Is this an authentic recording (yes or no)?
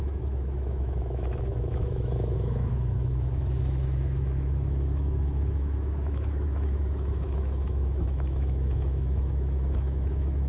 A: no